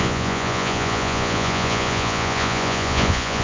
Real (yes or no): no